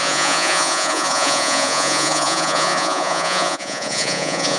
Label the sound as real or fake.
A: fake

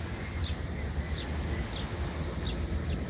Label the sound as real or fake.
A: real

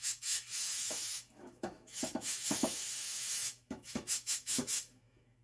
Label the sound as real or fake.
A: fake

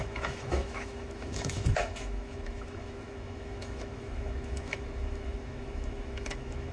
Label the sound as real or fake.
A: fake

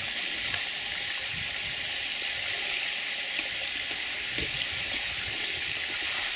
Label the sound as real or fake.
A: real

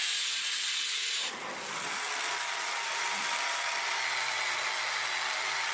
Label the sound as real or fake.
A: real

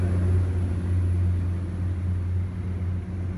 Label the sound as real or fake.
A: real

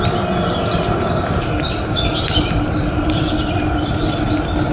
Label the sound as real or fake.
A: real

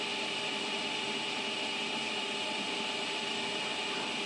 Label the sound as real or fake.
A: real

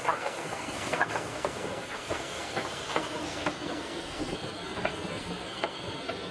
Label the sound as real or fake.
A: fake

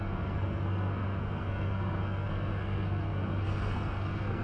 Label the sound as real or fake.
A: fake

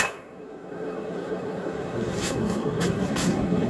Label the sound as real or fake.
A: fake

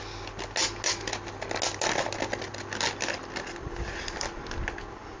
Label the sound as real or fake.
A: real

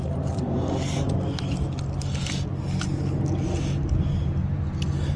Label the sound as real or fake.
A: real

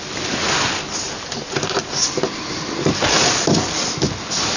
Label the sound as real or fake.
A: real